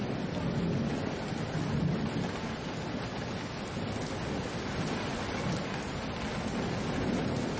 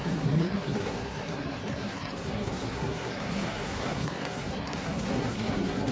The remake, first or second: second